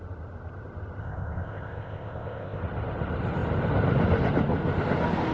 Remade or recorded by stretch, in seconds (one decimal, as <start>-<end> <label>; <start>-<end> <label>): 0.0-1.0 recorded; 1.0-2.6 remade; 2.6-5.3 recorded